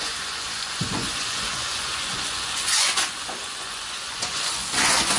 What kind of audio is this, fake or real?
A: fake